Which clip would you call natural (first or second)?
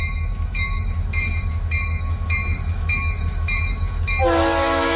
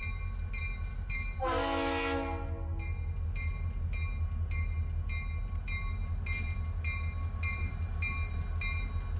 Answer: second